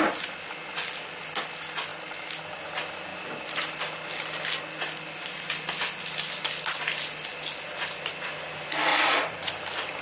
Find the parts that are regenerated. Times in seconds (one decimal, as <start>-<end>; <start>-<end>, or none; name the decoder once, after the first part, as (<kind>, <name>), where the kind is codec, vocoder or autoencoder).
8.9-9.5 (vocoder, Vocos)